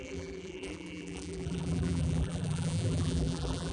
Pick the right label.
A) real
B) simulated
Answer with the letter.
B